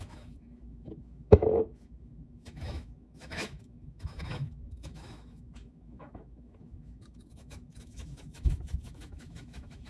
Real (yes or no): no